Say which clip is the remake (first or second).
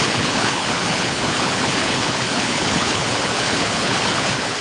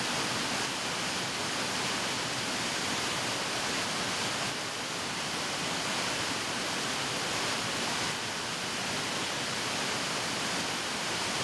first